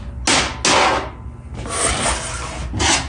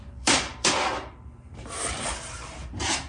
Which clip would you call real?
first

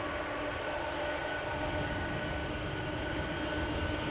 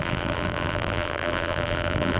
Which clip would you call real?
first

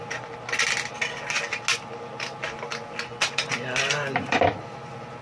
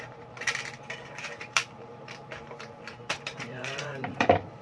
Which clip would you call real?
first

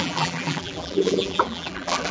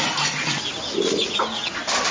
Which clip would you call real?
second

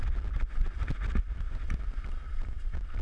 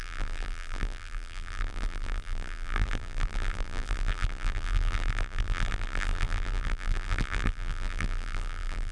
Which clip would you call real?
first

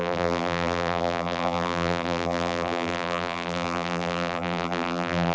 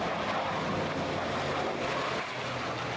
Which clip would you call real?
second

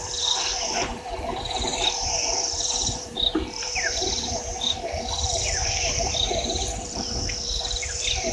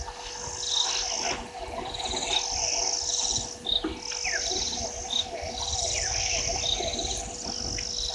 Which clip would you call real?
second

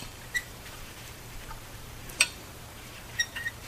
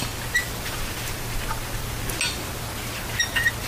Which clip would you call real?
second